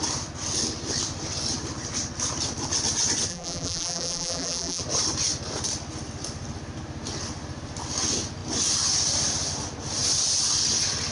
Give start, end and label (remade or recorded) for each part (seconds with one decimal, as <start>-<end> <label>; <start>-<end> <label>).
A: 0.0-3.3 recorded; 3.3-4.8 remade; 4.8-11.1 recorded